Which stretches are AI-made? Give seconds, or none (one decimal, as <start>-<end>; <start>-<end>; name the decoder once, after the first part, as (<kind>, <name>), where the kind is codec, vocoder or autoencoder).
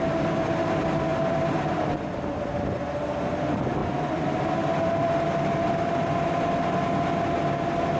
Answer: 1.1-2.4 (vocoder, BigVGAN v2); 3.8-6.7